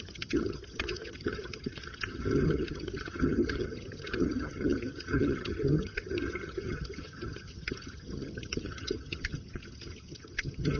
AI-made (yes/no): yes